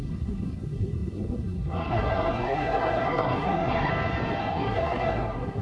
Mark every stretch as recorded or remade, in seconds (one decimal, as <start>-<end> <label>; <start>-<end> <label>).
0.0-3.9 remade; 3.9-4.4 recorded; 4.4-5.6 remade